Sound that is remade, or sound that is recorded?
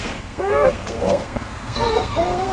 remade